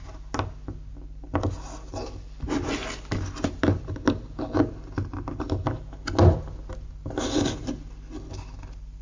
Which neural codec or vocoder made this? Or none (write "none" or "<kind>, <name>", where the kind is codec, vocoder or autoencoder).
none